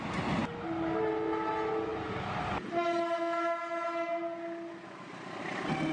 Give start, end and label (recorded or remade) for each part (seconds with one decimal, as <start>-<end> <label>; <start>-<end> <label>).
0.0-5.9 recorded